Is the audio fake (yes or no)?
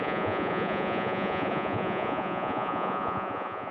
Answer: yes